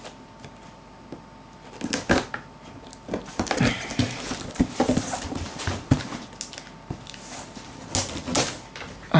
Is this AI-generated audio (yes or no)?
no